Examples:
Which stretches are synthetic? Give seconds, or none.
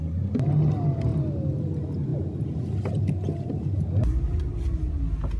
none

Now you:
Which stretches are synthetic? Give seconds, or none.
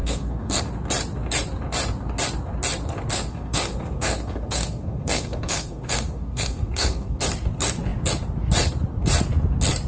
0.0-0.6 (codec, SNAC); 3.1-7.2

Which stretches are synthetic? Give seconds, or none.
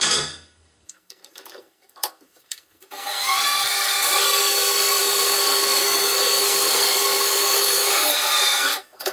0.0-9.1 (codec, SNAC)